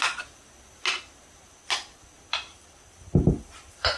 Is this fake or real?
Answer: real